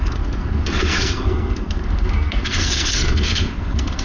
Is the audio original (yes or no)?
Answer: no